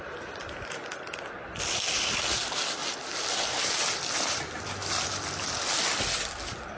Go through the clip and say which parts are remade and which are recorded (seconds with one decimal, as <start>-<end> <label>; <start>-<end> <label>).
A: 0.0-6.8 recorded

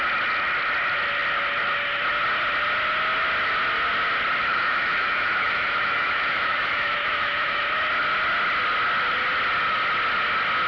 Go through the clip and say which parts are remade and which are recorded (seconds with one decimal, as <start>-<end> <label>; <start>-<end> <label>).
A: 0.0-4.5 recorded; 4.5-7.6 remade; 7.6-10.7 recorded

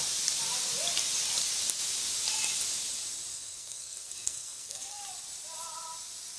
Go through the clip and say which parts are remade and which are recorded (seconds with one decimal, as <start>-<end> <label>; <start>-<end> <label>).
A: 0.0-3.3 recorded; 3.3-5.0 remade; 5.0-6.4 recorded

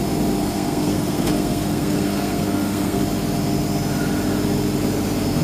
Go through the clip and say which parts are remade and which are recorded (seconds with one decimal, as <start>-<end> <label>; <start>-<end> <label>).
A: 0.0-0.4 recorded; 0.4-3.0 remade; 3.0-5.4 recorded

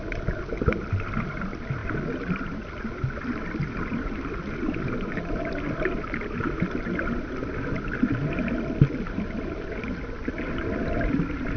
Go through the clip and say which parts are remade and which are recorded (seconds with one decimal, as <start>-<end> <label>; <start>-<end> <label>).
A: 0.0-11.6 recorded